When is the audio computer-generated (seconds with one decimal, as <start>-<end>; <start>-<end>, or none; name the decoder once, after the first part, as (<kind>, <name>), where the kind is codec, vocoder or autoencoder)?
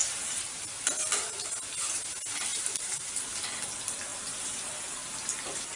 2.5-3.2 (vocoder, BigVGAN v2); 4.1-4.7